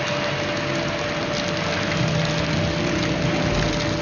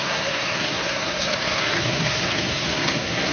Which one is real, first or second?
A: first